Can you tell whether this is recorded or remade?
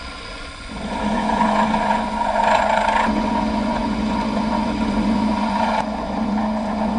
remade